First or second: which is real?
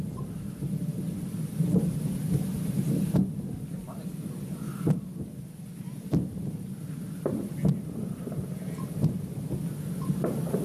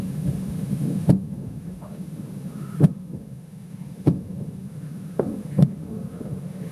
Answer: first